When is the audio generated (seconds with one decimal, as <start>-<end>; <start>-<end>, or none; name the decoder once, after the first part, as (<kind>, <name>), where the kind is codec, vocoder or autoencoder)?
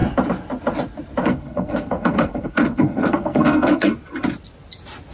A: 1.2-3.9 (codec, SNAC)